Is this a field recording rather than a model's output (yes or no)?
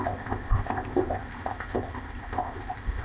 no